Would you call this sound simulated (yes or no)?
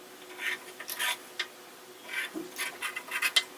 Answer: no